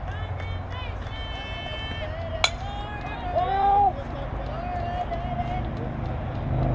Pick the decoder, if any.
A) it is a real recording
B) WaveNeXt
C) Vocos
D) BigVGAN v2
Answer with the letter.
A